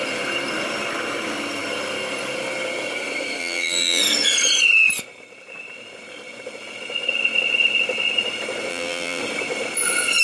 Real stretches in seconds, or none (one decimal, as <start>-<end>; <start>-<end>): 0.0-3.4; 4.0-8.7; 9.2-10.2